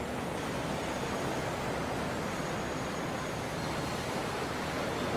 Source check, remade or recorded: recorded